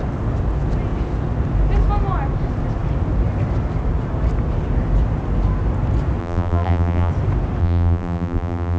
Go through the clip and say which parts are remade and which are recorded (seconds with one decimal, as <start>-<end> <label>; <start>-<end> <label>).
0.0-6.2 recorded; 6.2-7.1 remade; 7.1-7.6 recorded; 7.6-8.8 remade